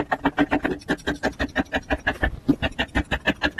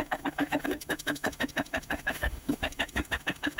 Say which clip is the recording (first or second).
first